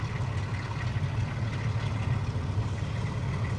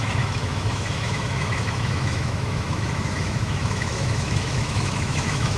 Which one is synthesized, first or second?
second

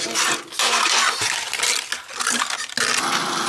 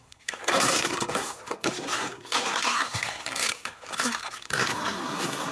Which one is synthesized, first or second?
second